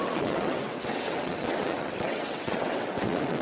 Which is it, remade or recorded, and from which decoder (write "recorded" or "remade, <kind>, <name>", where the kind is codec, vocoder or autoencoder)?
remade, vocoder, WaveNeXt